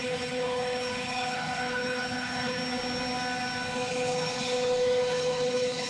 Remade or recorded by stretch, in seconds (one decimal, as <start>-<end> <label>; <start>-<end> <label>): 0.0-2.6 remade; 2.6-3.9 recorded; 3.9-5.9 remade

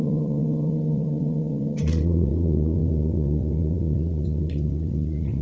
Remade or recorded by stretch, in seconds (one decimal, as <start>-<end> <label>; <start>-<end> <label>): 0.0-5.4 remade

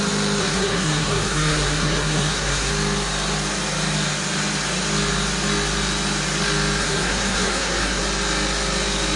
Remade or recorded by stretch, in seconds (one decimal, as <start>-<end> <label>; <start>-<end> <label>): 0.0-0.4 recorded; 0.4-2.7 remade; 2.7-6.8 recorded; 6.8-8.0 remade; 8.0-9.2 recorded

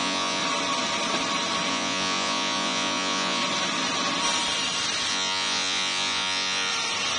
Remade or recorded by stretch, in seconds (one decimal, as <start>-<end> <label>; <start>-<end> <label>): 0.0-0.4 remade; 0.4-1.7 recorded; 1.7-3.4 remade; 3.4-5.1 recorded; 5.1-6.7 remade; 6.7-7.2 recorded

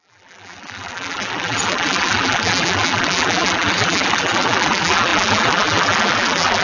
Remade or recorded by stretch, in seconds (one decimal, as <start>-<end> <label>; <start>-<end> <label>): 0.0-6.6 remade

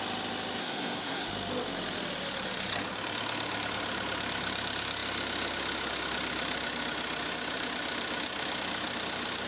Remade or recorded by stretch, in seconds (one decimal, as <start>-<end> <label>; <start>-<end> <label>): 0.0-0.6 recorded; 0.6-1.3 remade; 1.3-9.5 recorded